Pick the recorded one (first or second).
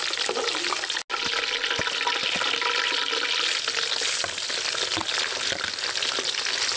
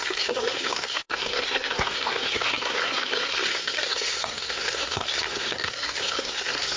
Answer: first